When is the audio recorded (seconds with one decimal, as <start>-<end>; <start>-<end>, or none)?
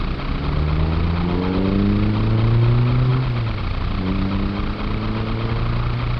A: 0.0-6.2